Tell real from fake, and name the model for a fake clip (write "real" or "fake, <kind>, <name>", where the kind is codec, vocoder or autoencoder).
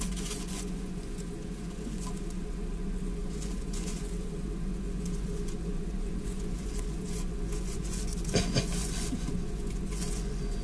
fake, vocoder, Vocos